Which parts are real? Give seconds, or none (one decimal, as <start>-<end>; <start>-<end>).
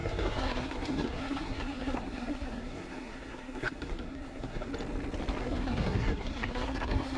4.7-5.4